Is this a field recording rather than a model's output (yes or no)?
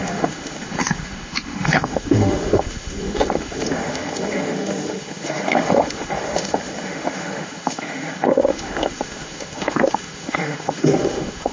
no